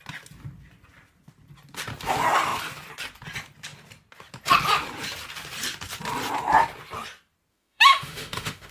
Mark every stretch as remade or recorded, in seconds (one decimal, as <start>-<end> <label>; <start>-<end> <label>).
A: 0.0-7.5 recorded; 7.5-8.7 remade